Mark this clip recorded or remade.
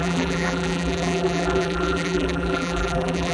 remade